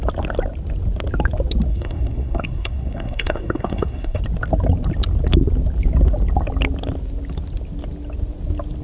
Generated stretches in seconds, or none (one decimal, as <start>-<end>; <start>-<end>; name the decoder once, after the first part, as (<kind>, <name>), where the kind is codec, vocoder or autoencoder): 1.7-4.2 (codec, SNAC)